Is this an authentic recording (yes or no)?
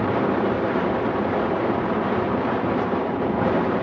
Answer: no